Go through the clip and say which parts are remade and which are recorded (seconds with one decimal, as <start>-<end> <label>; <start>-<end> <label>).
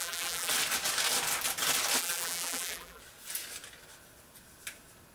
0.0-0.5 remade; 0.5-2.0 recorded; 2.0-3.0 remade; 3.0-5.1 recorded